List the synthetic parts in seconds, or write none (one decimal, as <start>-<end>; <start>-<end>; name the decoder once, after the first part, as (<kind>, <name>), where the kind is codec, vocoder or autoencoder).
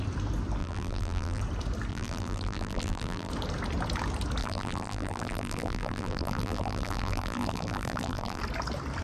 0.6-1.4 (vocoder, BigVGAN v2); 1.9-3.3; 4.4-8.4